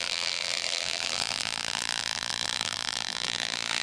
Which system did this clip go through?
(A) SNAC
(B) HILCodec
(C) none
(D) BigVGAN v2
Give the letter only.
D